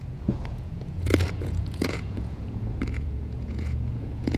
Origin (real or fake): fake